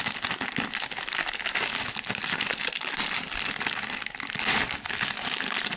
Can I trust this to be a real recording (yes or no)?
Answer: yes